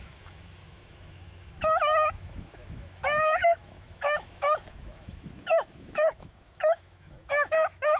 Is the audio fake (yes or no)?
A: yes